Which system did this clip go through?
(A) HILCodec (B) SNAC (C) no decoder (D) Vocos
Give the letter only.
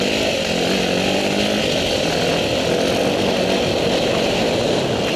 C